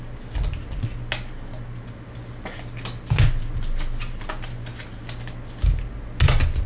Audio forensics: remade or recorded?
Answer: recorded